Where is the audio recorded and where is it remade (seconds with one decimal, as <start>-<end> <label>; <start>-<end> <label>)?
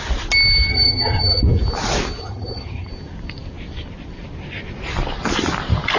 0.0-0.7 recorded; 0.7-1.4 remade; 1.4-2.2 recorded; 2.2-2.9 remade; 2.9-6.0 recorded